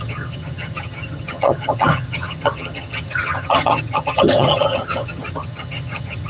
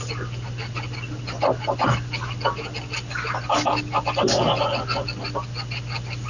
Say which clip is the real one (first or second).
second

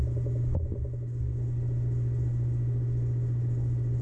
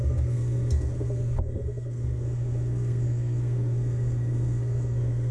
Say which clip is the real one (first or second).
first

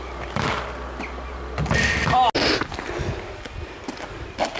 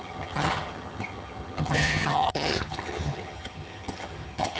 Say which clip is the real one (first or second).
first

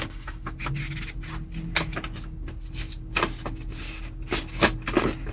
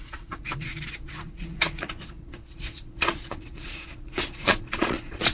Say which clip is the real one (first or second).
first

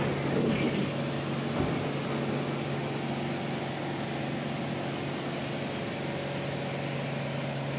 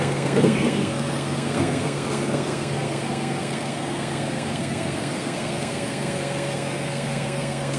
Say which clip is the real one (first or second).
first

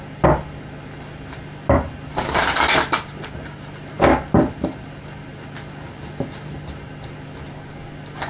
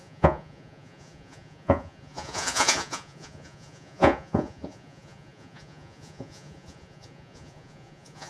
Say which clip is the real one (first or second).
first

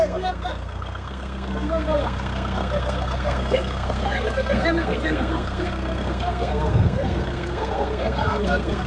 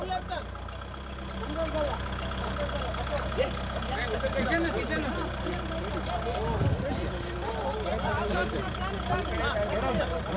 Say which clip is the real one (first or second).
second